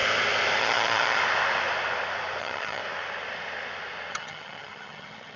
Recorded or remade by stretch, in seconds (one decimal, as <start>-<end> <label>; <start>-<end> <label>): 0.0-0.6 recorded; 0.6-1.2 remade; 1.2-2.4 recorded; 2.4-2.8 remade; 2.8-4.1 recorded; 4.1-5.4 remade